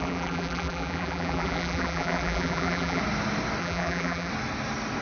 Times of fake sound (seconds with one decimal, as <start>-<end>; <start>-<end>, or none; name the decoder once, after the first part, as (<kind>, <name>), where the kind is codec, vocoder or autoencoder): 0.0-3.0 (vocoder, BigVGAN v2); 3.6-4.3